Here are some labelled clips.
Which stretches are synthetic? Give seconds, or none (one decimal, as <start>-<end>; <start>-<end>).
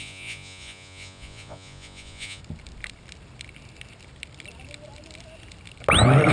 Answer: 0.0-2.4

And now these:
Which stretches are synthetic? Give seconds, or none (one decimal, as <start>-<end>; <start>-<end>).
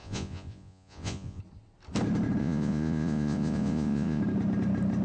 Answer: 0.0-1.4; 2.4-4.2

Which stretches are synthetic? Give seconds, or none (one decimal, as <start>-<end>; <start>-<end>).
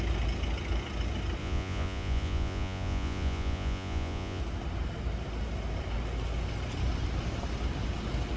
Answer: 1.4-4.4